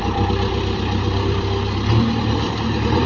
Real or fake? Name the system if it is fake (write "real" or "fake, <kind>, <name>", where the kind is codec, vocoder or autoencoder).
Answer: fake, vocoder, BigVGAN v2